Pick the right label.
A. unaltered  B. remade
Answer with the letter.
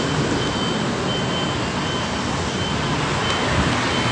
A